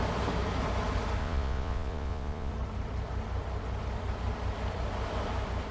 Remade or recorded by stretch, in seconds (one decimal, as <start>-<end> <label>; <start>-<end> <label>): 0.0-1.2 recorded; 1.2-2.5 remade; 2.5-5.7 recorded